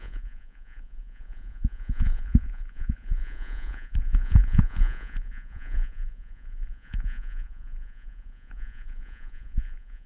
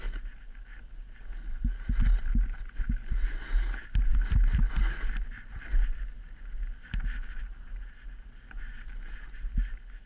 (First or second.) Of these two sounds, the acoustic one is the second